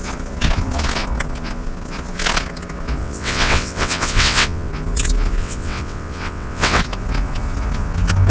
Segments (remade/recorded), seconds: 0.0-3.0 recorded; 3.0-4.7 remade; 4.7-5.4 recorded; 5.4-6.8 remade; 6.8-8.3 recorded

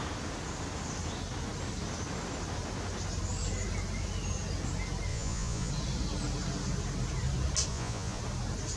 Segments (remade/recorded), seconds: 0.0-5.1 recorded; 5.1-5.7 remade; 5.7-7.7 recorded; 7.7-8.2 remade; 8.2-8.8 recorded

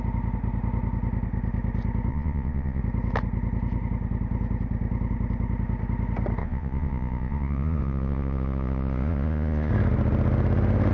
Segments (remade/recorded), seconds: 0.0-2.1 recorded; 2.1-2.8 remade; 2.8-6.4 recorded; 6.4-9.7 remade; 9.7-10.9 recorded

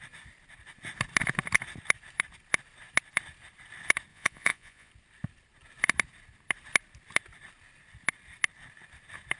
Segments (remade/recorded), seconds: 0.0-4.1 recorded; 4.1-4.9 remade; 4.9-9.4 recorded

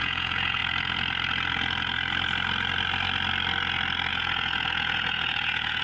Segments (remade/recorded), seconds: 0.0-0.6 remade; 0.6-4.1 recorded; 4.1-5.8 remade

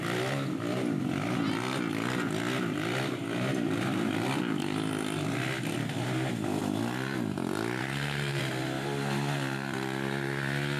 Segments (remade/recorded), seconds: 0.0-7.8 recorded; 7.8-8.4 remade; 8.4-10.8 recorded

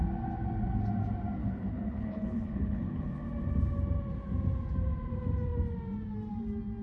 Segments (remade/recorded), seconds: 0.0-1.4 recorded; 1.4-3.1 remade; 3.1-6.8 recorded

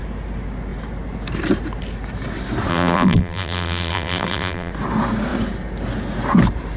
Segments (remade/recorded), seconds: 0.0-2.7 recorded; 2.7-4.7 remade; 4.7-6.8 recorded